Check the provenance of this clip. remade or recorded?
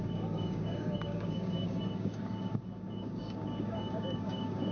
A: remade